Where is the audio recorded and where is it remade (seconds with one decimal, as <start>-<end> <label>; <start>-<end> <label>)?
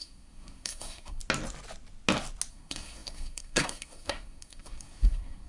0.0-1.2 remade; 1.2-2.5 recorded; 2.5-5.5 remade